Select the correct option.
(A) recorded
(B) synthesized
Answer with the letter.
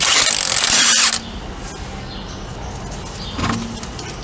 A